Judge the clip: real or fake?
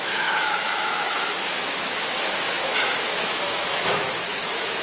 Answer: fake